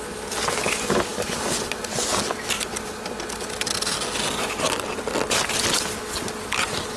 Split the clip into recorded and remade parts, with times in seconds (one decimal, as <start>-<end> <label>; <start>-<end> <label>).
0.0-7.0 recorded